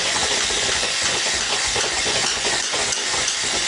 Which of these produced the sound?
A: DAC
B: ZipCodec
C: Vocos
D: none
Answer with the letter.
C